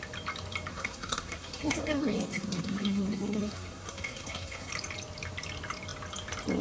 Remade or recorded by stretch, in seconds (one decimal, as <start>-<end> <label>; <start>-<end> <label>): 0.0-0.7 recorded; 0.7-4.7 remade; 4.7-6.6 recorded